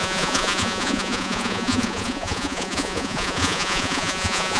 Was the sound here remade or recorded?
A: remade